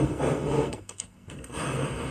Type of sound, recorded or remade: remade